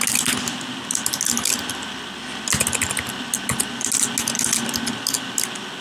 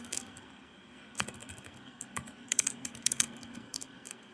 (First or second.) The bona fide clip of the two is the first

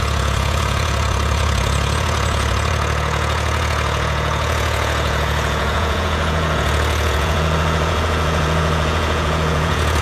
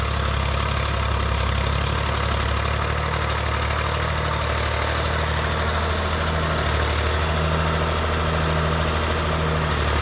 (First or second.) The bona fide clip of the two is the second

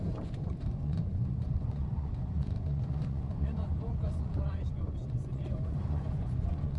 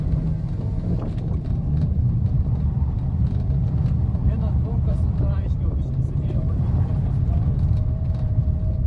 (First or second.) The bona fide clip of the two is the second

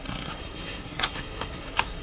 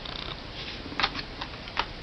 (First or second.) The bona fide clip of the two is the second